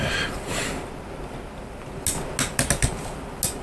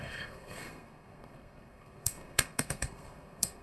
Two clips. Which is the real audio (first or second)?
first